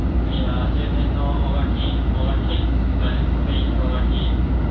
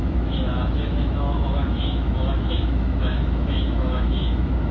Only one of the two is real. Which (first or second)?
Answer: first